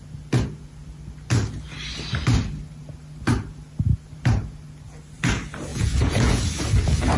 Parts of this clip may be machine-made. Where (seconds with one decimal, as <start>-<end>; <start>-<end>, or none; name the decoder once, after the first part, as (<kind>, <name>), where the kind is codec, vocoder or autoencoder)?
5.7-6.4 (vocoder, Vocos)